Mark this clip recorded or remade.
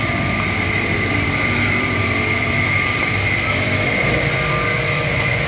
remade